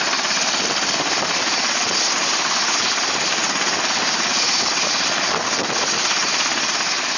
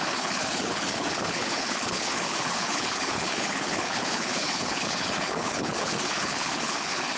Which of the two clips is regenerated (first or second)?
second